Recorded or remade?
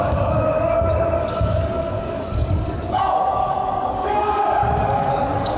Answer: remade